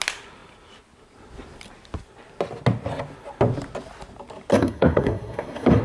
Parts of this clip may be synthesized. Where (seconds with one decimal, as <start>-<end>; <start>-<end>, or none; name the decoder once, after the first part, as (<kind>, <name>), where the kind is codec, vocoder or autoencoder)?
4.5-5.8 (codec, SNAC)